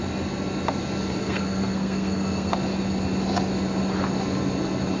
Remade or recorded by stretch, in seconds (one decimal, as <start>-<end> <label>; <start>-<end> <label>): 0.0-1.2 recorded; 1.2-2.5 remade; 2.5-5.0 recorded